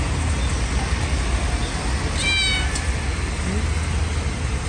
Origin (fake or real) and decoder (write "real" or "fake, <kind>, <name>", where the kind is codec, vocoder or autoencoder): real